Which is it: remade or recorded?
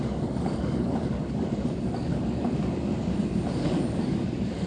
remade